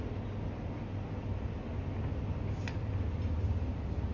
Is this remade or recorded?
recorded